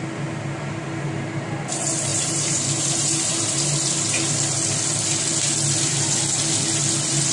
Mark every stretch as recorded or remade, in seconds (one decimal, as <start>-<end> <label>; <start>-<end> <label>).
0.0-2.1 recorded; 2.1-3.7 remade; 3.7-7.3 recorded